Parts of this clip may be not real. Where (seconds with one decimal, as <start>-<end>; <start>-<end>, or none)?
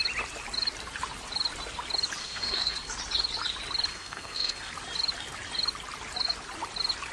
2.2-2.9; 3.9-4.7